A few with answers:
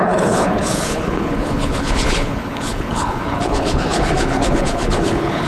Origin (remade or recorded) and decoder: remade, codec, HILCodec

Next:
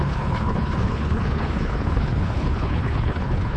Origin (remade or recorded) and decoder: remade, codec, HILCodec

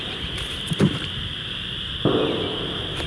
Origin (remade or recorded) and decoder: recorded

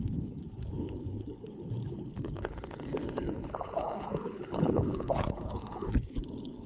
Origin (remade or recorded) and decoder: remade, codec, HILCodec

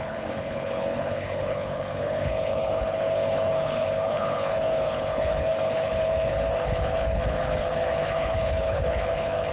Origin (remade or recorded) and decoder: remade, codec, HILCodec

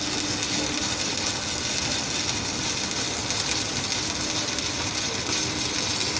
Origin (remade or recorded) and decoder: recorded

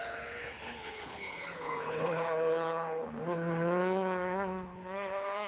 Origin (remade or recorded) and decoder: remade, codec, HILCodec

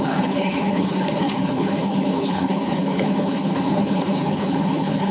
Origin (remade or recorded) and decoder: remade, codec, HILCodec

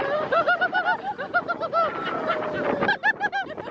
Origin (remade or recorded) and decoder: recorded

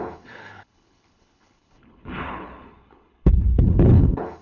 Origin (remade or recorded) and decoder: remade, codec, HILCodec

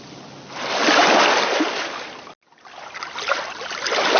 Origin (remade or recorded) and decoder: recorded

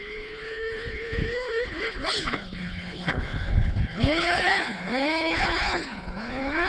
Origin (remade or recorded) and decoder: remade, codec, HILCodec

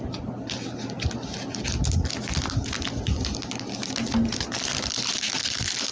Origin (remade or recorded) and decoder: recorded